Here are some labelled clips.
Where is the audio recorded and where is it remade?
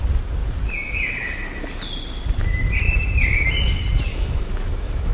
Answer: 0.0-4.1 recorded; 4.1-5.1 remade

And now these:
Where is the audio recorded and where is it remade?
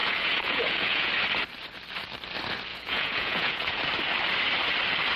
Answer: 0.0-1.1 remade; 1.1-2.7 recorded; 2.7-3.8 remade; 3.8-5.2 recorded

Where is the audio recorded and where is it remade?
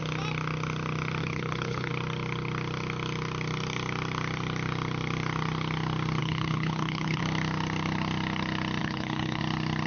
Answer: 0.0-1.2 recorded; 1.2-1.9 remade; 1.9-6.2 recorded; 6.2-7.2 remade; 7.2-8.8 recorded; 8.8-9.4 remade; 9.4-9.9 recorded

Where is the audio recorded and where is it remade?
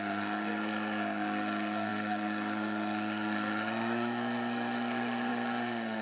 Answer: 0.0-6.0 remade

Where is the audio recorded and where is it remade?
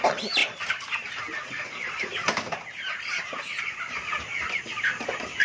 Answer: 0.0-5.4 recorded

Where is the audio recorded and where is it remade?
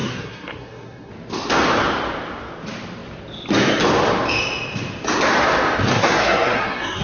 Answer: 0.0-1.1 remade; 1.1-5.9 recorded; 5.9-7.0 remade